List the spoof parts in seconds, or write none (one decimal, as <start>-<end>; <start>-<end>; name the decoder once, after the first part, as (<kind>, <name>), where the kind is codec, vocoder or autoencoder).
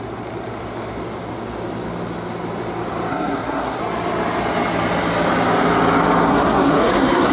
3.1-3.8 (codec, SNAC); 6.3-7.3